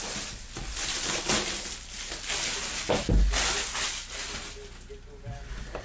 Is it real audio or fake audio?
real